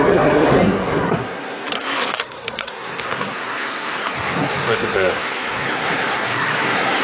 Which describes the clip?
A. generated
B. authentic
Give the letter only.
A